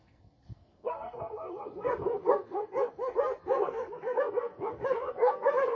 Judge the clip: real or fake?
fake